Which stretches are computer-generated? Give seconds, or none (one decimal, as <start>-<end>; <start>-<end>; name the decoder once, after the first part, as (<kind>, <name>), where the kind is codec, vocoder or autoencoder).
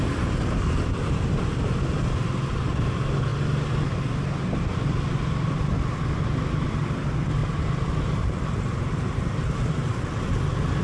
7.4-10.0 (vocoder, BigVGAN v2)